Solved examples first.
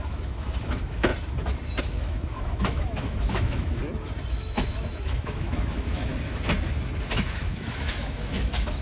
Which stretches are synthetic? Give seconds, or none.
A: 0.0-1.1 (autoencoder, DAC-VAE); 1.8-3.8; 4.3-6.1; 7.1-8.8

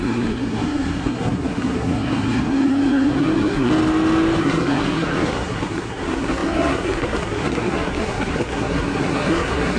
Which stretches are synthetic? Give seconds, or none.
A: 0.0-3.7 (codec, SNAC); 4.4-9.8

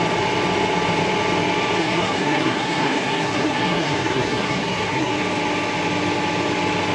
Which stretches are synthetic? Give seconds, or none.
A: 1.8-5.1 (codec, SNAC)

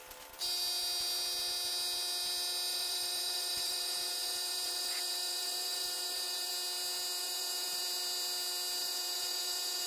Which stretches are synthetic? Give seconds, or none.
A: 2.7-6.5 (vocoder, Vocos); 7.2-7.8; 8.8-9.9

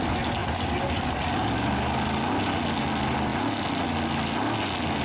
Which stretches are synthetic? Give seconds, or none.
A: none

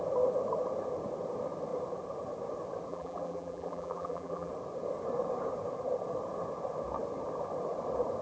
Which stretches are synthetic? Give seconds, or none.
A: 2.9-4.5 (vocoder, BigVGAN v2)